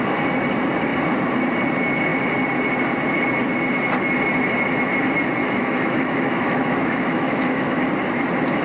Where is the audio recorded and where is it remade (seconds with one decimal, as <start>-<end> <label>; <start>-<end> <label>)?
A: 0.0-5.4 recorded; 5.4-7.9 remade; 7.9-8.6 recorded